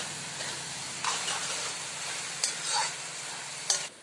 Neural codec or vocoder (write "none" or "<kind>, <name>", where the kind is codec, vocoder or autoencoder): none